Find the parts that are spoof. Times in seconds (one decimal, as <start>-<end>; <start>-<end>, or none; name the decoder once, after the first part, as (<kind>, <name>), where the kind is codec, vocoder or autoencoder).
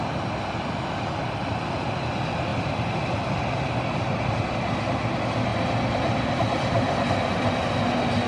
2.5-4.2 (vocoder, BigVGAN v2); 5.5-7.5